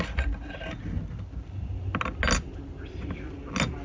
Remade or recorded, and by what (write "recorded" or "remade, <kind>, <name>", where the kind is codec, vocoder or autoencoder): recorded